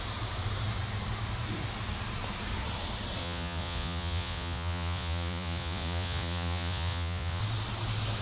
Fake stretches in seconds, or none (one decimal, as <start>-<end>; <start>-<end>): 3.2-7.4

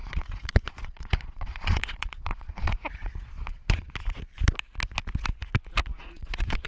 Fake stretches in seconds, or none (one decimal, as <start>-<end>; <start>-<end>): 0.0-3.9; 5.9-6.7

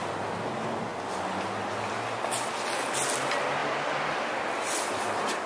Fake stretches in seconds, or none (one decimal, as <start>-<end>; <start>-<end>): none

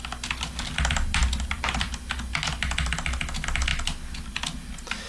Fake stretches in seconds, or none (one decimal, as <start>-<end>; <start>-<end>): none

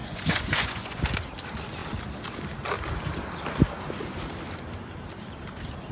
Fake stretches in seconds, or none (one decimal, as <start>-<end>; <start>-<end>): 0.0-1.0

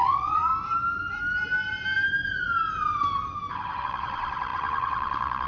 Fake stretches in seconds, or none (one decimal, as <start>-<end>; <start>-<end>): 0.0-0.5; 3.8-5.5

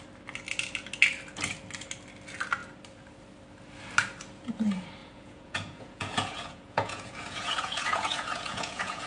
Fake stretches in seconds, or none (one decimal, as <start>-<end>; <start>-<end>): 5.0-9.1

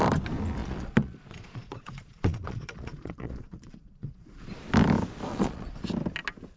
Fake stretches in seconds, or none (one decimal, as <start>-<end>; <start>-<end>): 0.6-4.6; 5.3-5.8